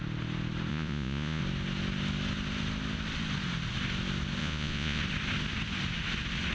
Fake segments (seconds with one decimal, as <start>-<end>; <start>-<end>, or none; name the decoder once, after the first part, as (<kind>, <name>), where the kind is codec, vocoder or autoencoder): 0.7-1.4 (vocoder, Vocos); 4.4-5.0